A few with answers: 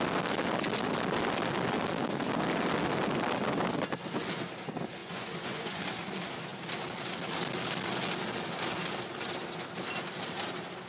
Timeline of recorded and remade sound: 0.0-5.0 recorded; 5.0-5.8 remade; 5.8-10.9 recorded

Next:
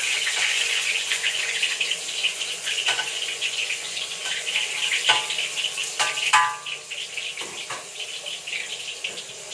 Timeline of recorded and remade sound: 0.0-1.6 remade; 1.6-2.2 recorded; 2.2-4.6 remade; 4.6-9.5 recorded

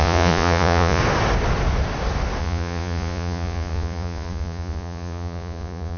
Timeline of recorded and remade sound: 0.0-1.0 remade; 1.0-2.4 recorded; 2.4-6.0 remade

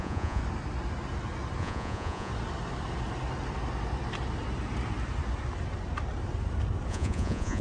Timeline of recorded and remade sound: 0.0-0.4 remade; 0.4-1.6 recorded; 1.6-2.3 remade; 2.3-6.9 recorded; 6.9-7.6 remade